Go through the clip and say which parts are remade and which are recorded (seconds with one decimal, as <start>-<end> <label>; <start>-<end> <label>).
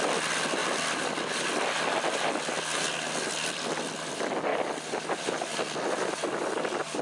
0.0-7.0 recorded